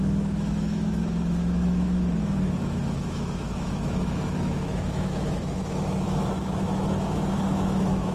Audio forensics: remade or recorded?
remade